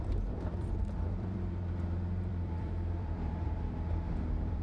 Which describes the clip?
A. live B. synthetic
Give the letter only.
B